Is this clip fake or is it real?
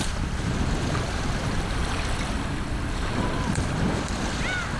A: fake